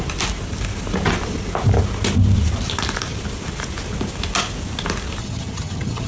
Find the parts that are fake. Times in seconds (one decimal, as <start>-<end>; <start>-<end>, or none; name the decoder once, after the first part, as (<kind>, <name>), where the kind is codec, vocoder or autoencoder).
5.2-6.1 (vocoder, HiFi-GAN)